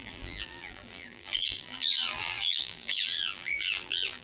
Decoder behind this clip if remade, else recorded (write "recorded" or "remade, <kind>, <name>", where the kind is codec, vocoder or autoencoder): remade, vocoder, BigVGAN v2